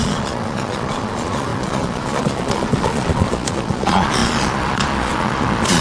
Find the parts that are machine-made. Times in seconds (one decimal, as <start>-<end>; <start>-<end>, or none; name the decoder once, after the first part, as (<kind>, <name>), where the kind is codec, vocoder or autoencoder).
0.0-5.8 (vocoder, Vocos)